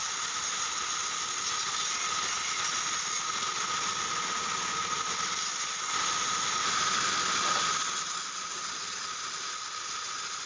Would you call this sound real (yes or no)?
yes